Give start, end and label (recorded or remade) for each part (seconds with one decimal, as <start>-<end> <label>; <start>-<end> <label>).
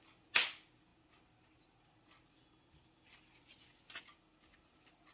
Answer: 0.0-5.1 recorded